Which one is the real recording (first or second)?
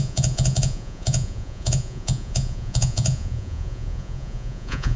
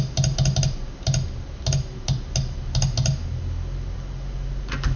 second